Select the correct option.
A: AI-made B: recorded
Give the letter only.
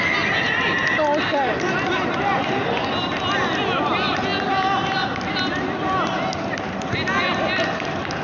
B